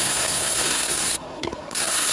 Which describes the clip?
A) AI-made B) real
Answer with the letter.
A